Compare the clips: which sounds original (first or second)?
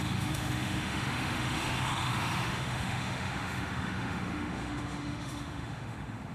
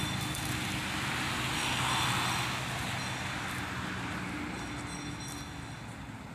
second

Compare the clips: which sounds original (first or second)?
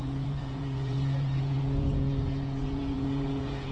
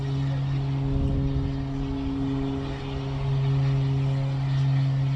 second